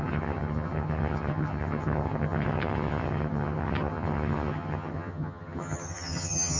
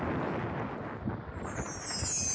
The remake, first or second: first